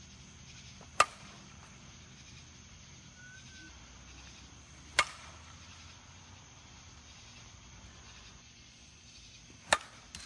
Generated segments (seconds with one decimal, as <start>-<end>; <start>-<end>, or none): 7.9-9.1